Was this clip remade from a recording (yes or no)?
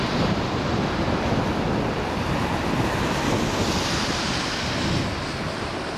no